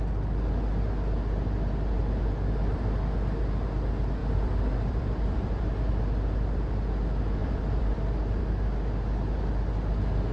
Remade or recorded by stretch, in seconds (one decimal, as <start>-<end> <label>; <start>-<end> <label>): 0.0-4.2 recorded; 4.2-5.9 remade; 5.9-7.4 recorded; 7.4-8.4 remade; 8.4-10.3 recorded